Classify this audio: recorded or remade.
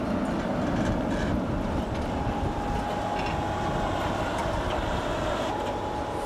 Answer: recorded